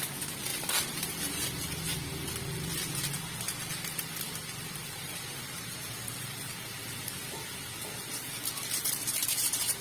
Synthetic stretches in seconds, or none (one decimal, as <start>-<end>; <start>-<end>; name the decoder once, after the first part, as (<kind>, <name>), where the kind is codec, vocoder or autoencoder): 0.5-1.8 (vocoder, BigVGAN v2); 4.8-6.2